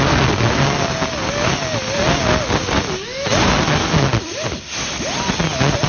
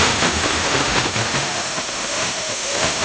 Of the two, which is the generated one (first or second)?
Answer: second